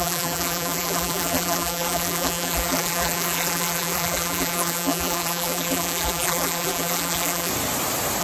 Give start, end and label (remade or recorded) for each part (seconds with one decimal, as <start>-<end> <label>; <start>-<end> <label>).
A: 0.0-7.5 remade; 7.5-8.2 recorded